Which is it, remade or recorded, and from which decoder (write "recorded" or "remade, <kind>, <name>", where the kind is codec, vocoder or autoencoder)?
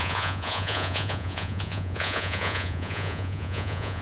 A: remade, vocoder, Vocos